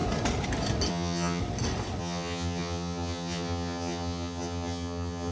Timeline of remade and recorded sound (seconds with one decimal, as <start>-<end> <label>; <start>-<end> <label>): 0.0-0.9 recorded; 0.9-1.4 remade; 1.4-2.0 recorded; 2.0-5.3 remade